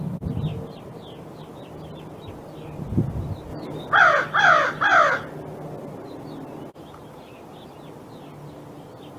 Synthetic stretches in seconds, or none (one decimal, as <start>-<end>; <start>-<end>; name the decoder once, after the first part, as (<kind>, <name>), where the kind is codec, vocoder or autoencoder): 0.5-1.3 (vocoder, BigVGAN v2); 3.5-4.0